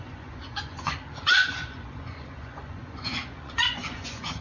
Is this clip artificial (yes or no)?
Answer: yes